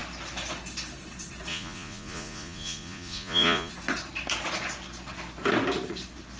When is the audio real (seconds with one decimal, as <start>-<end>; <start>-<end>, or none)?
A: 0.0-1.5; 3.7-6.4